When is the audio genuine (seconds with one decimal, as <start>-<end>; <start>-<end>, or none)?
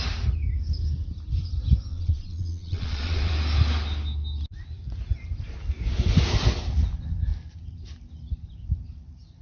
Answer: 0.0-1.9; 3.3-9.4